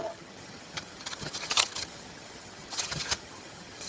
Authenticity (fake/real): fake